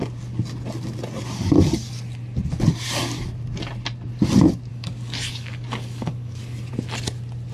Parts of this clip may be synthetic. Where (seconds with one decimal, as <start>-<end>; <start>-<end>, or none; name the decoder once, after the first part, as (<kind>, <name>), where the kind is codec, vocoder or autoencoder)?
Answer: 4.7-6.7 (codec, DAC)